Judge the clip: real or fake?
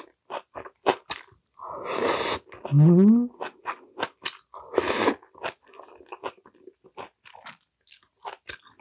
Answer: real